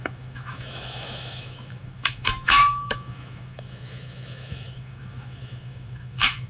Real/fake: fake